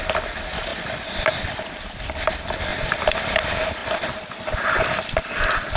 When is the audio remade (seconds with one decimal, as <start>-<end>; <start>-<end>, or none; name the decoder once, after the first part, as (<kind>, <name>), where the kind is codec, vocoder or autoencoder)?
0.7-1.8 (vocoder, BigVGAN v2); 2.7-3.3; 3.8-5.8